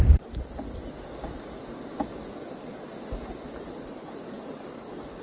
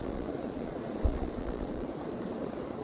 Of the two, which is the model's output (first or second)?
second